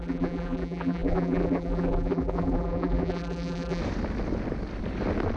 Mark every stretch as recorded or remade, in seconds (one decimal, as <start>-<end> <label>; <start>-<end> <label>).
0.0-3.8 remade; 3.8-5.4 recorded